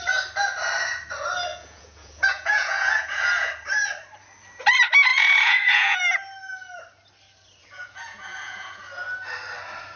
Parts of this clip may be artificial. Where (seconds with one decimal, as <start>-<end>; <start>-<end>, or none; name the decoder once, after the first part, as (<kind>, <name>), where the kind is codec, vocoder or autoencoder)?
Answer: 1.5-3.5 (vocoder, Vocos); 5.1-6.0; 7.6-8.8